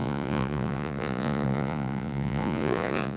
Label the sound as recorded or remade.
remade